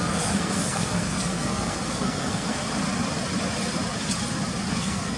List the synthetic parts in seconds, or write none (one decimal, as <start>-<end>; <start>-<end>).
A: 0.0-2.6; 4.7-5.2